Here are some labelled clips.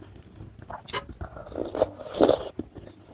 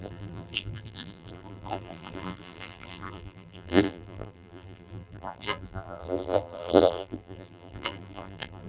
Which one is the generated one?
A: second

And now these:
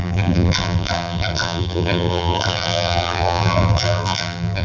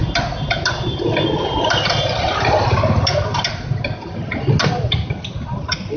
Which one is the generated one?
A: first